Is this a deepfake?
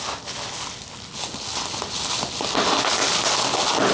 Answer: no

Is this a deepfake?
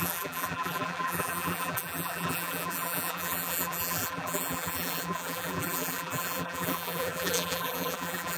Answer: yes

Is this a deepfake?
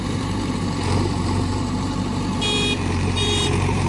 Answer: yes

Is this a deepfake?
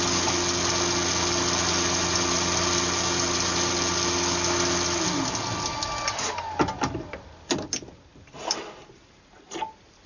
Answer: no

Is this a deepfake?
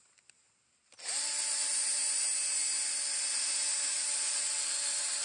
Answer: no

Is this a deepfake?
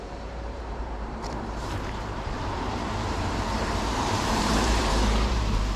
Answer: yes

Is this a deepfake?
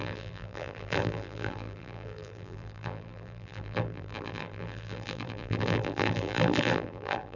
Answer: yes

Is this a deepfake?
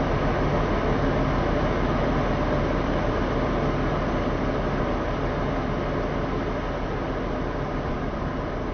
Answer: no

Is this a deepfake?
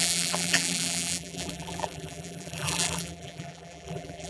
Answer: yes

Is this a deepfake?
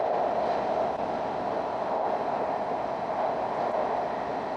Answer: no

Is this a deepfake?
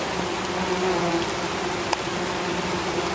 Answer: no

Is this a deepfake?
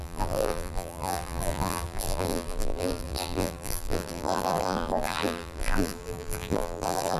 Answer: yes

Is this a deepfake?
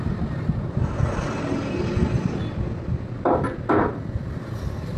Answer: no